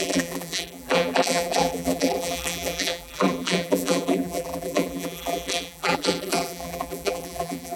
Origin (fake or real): fake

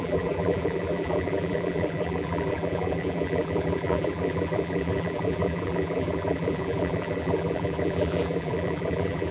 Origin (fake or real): fake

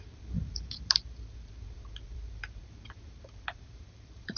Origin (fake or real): fake